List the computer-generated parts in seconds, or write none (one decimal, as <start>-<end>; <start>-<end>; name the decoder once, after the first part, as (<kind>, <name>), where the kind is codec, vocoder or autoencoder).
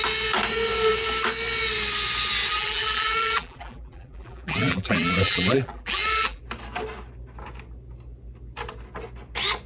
2.5-6.4 (vocoder, BigVGAN v2)